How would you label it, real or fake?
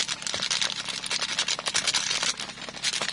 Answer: real